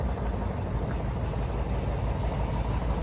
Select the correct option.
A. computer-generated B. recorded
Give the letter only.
B